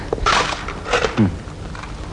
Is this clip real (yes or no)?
yes